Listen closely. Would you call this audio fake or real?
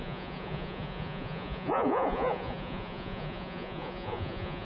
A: fake